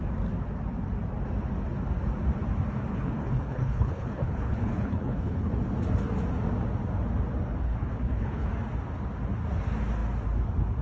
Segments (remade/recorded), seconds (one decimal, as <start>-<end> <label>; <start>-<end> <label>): 0.0-2.9 recorded; 2.9-5.5 remade; 5.5-7.6 recorded; 7.6-8.5 remade; 8.5-10.8 recorded